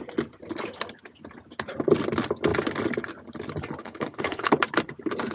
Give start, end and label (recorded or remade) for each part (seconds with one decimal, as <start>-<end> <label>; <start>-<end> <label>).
0.0-3.8 recorded; 3.8-4.5 remade; 4.5-5.3 recorded

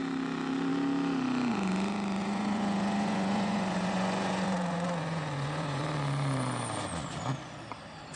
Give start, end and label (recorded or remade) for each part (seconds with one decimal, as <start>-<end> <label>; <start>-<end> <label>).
0.0-2.2 recorded; 2.2-5.8 remade; 5.8-8.2 recorded

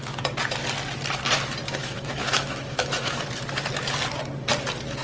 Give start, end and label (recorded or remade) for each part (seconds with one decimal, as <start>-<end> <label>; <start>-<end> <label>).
0.0-1.6 recorded; 1.6-3.2 remade; 3.2-5.0 recorded

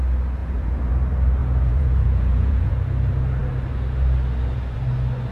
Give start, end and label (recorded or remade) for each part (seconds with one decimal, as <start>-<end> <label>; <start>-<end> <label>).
0.0-0.4 recorded; 0.4-0.9 remade; 0.9-1.4 recorded; 1.4-2.7 remade; 2.7-5.3 recorded

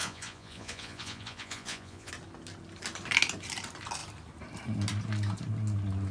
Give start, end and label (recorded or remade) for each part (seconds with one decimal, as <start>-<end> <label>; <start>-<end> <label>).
0.0-2.1 remade; 2.1-6.1 recorded

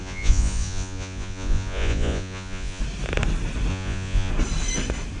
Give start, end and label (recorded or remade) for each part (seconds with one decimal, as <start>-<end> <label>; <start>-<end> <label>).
0.0-2.8 remade; 2.8-3.7 recorded; 3.7-4.3 remade; 4.3-5.2 recorded